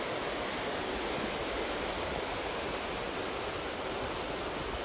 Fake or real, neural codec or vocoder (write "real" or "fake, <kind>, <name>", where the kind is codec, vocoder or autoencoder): real